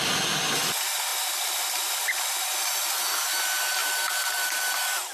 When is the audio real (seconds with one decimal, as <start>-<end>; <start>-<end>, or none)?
0.0-3.8; 4.6-5.1